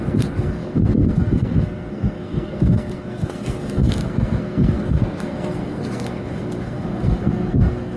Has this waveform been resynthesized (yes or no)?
yes